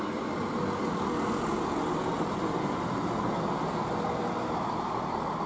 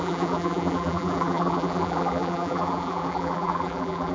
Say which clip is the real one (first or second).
first